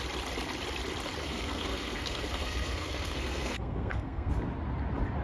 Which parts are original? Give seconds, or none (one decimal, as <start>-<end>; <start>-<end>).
0.0-1.2; 4.3-5.2